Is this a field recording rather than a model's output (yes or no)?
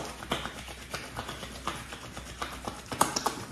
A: yes